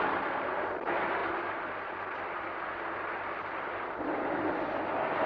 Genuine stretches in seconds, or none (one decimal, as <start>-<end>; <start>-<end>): 0.0-1.2; 4.4-5.3